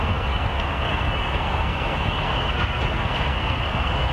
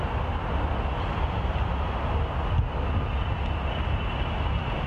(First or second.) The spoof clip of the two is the first